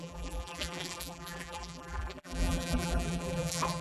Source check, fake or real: fake